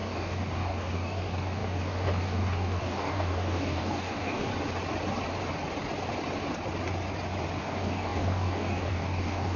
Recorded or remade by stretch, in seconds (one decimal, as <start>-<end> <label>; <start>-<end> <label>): 0.0-4.5 remade; 4.5-7.6 recorded; 7.6-9.6 remade